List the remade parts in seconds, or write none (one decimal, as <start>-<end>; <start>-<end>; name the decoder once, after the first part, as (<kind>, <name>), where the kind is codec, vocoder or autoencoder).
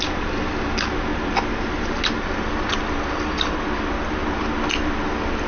none